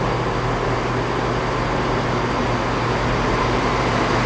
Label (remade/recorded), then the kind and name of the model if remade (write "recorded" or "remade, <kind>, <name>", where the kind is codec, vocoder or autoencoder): recorded